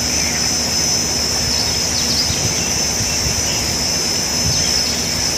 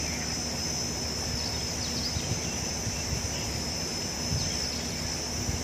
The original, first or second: first